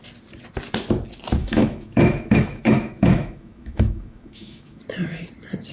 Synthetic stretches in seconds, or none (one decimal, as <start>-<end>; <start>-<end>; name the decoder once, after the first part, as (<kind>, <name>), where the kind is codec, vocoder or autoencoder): 1.4-4.8 (autoencoder, DAC-VAE)

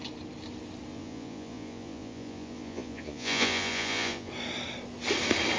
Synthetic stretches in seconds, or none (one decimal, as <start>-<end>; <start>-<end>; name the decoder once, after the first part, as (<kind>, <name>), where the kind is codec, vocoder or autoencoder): 0.9-4.3 (vocoder, Vocos)

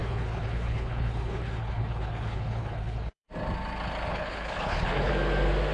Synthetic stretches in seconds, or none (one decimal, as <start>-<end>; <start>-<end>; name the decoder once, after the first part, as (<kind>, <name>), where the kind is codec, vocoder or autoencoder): 0.0-3.3 (codec, HILCodec); 4.1-5.1

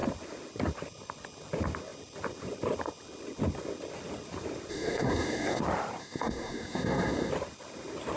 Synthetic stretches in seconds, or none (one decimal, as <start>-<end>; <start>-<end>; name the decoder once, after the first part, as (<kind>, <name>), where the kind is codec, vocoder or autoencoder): 4.7-5.6 (codec, SNAC); 6.0-7.3

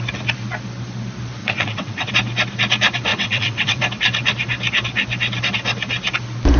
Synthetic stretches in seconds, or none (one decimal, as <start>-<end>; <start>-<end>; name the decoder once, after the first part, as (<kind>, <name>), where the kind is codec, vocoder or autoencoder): 1.4-2.1 (vocoder, WaveNeXt); 3.1-3.8

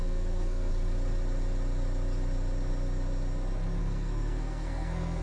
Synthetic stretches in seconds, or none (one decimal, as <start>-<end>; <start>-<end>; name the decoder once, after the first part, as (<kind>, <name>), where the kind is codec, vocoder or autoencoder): 0.0-0.7 (codec, SNAC); 3.8-5.2

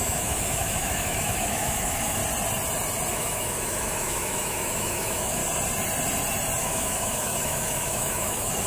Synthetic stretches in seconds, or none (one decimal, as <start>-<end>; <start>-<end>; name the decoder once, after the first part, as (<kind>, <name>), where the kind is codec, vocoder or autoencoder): 0.0-2.2 (autoencoder, DAC-VAE); 3.1-5.4; 6.6-8.7